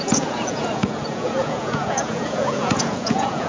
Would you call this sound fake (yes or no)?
yes